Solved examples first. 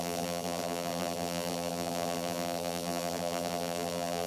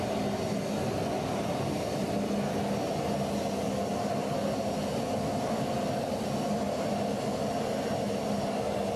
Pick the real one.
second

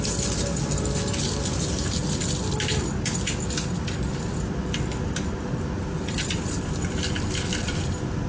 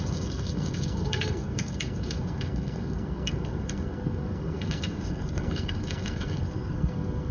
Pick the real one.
first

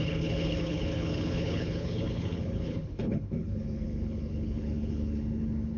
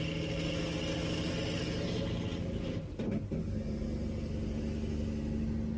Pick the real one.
second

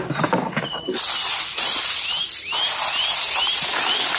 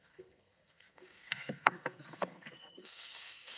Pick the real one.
first